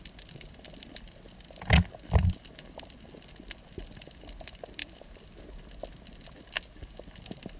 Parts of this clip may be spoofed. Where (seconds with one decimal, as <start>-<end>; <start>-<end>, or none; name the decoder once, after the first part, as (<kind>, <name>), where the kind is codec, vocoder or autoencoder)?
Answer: none